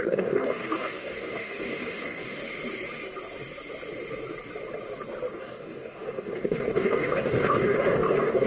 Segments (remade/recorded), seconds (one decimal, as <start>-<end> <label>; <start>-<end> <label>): 0.0-2.4 remade; 2.4-5.3 recorded; 5.3-8.5 remade